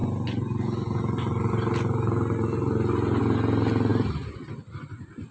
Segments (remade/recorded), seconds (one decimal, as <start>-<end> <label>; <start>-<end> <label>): 0.0-5.3 recorded